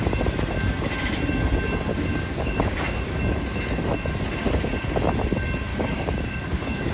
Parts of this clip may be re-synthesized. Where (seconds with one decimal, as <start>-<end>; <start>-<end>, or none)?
1.9-3.2; 5.7-6.9